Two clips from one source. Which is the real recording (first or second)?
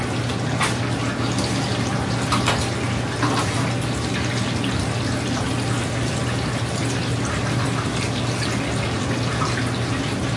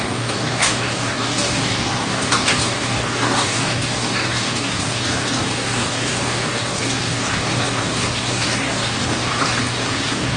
first